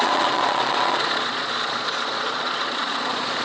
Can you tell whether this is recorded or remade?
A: remade